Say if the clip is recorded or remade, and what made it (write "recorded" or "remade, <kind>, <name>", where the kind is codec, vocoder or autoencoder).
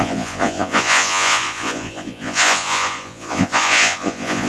remade, vocoder, Vocos